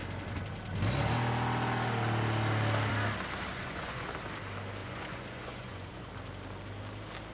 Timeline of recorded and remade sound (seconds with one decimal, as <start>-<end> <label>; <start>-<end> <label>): 0.0-3.5 recorded; 3.5-4.1 remade; 4.1-4.8 recorded; 4.8-6.1 remade; 6.1-7.3 recorded